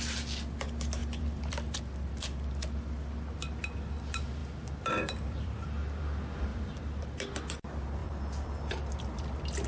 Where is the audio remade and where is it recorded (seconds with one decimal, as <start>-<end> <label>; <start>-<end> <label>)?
0.0-1.0 recorded; 1.0-1.8 remade; 1.8-4.4 recorded; 4.4-6.0 remade; 6.0-6.5 recorded; 6.5-7.0 remade; 7.0-8.0 recorded; 8.0-9.7 remade